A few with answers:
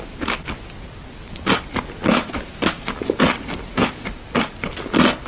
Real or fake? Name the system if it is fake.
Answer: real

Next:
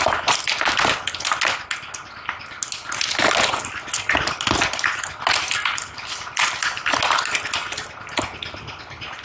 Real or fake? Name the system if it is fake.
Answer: real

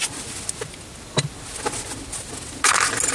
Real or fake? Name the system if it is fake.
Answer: real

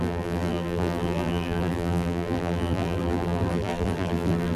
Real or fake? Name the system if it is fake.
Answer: fake, vocoder, BigVGAN v2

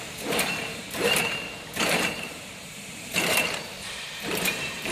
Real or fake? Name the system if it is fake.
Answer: fake, vocoder, BigVGAN v2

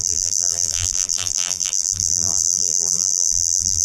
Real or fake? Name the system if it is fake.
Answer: fake, vocoder, BigVGAN v2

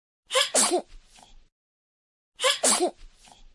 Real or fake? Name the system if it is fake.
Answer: real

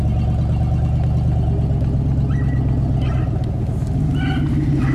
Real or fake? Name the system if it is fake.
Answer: real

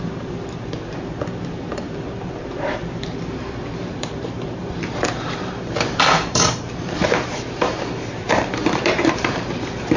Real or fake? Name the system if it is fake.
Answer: fake, vocoder, BigVGAN v2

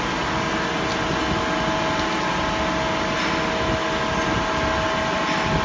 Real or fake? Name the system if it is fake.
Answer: real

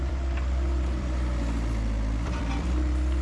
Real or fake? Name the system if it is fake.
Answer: fake, vocoder, BigVGAN v2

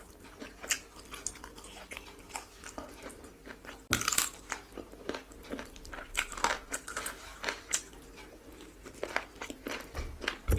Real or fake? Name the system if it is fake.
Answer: real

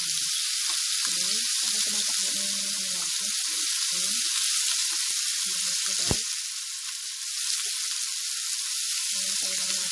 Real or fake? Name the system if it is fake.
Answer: real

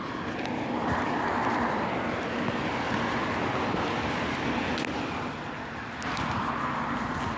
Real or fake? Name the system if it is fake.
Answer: real